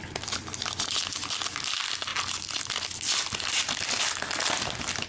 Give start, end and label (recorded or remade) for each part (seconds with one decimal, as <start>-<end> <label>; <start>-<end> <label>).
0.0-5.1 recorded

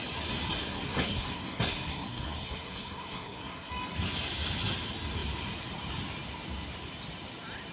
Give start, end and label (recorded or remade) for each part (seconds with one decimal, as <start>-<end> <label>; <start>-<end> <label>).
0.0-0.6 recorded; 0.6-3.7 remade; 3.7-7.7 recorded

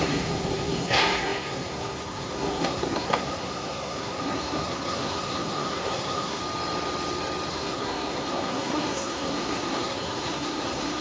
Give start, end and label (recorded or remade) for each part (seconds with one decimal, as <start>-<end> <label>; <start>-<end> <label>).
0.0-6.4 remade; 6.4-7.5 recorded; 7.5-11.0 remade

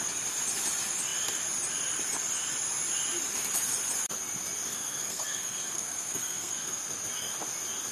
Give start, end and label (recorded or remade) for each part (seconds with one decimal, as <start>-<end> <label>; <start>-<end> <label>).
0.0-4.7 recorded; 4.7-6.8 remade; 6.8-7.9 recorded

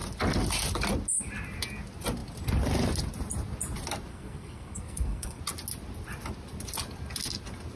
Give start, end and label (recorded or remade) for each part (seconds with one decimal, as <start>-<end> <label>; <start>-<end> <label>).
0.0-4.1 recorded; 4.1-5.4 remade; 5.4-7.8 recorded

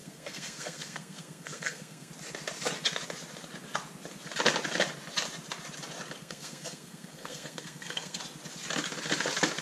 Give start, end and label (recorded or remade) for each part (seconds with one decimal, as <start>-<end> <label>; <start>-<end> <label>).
0.0-2.1 remade; 2.1-6.2 recorded; 6.2-8.2 remade; 8.2-9.6 recorded

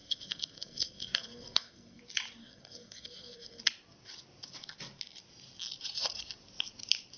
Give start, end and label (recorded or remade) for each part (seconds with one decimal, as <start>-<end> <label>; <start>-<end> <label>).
0.0-2.0 remade; 2.0-2.4 recorded; 2.4-3.6 remade; 3.6-7.2 recorded